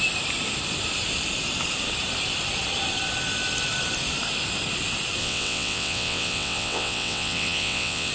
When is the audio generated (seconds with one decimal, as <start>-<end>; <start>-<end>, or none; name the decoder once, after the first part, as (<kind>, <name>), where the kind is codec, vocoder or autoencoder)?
5.2-8.1 (vocoder, WaveNeXt)